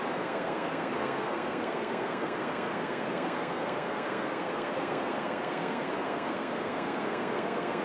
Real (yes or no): no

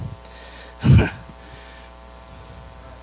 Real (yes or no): yes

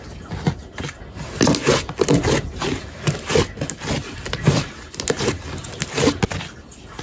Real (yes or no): yes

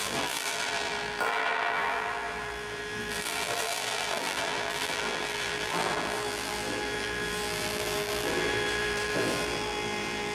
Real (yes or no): no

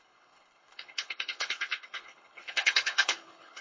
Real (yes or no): no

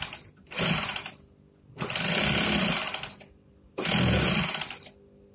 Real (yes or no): yes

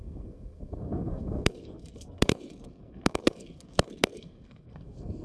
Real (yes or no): no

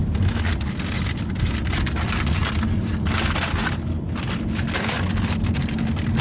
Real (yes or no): yes